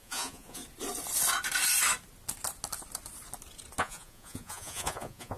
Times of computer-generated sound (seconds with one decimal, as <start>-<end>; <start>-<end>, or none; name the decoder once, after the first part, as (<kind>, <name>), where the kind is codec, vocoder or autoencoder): 0.0-0.6 (vocoder, Vocos); 3.8-5.4